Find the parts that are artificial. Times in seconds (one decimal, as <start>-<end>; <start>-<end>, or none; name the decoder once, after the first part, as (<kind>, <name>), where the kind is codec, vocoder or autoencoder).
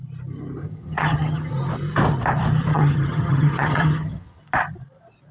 0.6-1.5 (vocoder, HiFi-GAN); 2.7-4.4